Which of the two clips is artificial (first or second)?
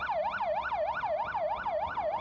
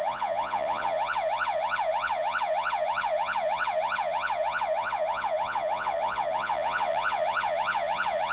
second